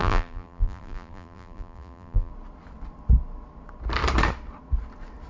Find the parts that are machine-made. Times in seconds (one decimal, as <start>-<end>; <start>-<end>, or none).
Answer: 0.0-2.3